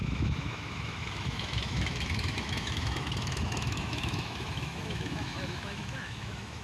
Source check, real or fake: fake